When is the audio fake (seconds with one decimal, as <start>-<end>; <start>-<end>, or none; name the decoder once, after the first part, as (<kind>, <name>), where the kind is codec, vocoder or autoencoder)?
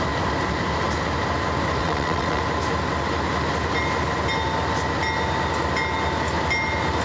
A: 1.8-2.4 (vocoder, WaveNeXt)